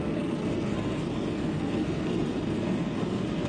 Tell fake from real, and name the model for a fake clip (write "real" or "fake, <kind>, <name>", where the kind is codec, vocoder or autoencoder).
fake, codec, SNAC